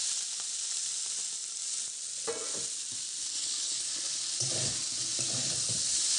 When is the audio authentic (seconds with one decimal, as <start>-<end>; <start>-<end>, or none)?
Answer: 0.0-3.4; 3.9-6.2